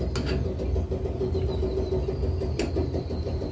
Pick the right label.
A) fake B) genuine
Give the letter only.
B